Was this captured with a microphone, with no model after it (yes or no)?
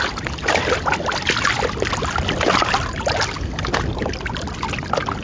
yes